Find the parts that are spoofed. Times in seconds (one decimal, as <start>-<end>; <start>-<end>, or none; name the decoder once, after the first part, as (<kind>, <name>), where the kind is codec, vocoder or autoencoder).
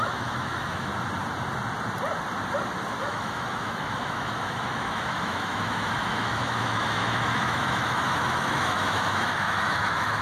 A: 0.0-0.9 (autoencoder, DAC-VAE); 3.0-10.2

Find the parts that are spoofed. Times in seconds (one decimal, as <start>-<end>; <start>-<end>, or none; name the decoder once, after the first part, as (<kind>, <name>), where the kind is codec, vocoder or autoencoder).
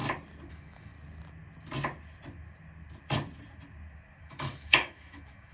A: 0.5-0.9 (autoencoder, DAC-VAE); 4.2-5.5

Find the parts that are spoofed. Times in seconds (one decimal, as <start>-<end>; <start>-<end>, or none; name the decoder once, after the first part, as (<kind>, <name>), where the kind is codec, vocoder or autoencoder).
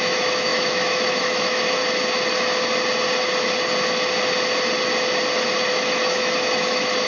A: 0.0-1.8 (autoencoder, DAC-VAE); 5.7-7.1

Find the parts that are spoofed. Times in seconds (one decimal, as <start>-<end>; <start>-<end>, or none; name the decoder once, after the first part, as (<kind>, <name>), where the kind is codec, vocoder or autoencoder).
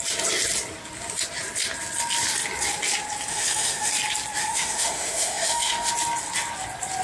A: 3.3-3.9 (autoencoder, DAC-VAE); 4.4-5.9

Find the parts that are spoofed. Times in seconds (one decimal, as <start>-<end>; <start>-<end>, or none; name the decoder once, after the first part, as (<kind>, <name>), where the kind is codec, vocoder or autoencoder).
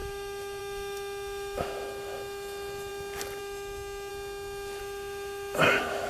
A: 0.0-2.9 (autoencoder, DAC-VAE); 3.4-4.1; 4.8-6.1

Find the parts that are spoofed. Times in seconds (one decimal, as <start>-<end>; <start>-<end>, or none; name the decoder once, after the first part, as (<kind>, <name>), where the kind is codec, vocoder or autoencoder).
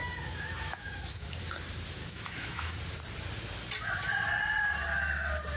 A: 0.0-1.4 (autoencoder, DAC-VAE); 2.0-2.8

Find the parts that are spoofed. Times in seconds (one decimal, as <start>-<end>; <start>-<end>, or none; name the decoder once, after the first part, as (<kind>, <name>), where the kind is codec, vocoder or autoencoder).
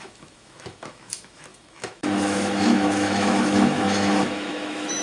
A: 0.0-5.0 (autoencoder, DAC-VAE)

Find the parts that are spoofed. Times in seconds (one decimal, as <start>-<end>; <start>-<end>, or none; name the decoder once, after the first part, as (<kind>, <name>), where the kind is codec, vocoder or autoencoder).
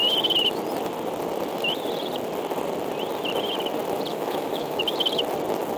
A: 4.1-4.8 (autoencoder, DAC-VAE)